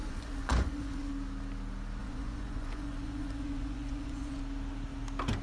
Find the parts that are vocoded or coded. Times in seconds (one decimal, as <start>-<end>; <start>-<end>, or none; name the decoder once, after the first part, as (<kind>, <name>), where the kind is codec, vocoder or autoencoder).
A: 0.0-1.1 (vocoder, Vocos); 2.0-4.4